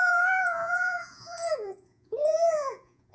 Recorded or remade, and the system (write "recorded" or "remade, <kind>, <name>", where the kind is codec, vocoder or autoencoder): remade, vocoder, Vocos